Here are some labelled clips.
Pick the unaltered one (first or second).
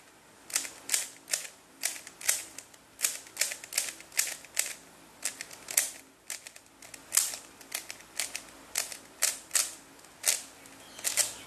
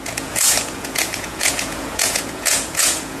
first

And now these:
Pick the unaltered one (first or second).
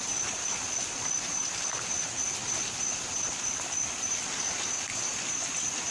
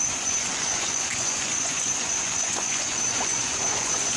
first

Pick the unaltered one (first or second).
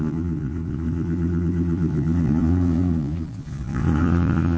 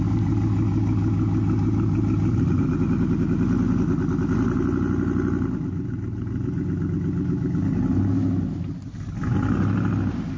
second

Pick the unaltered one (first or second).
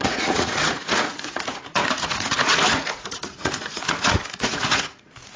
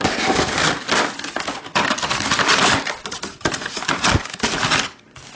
second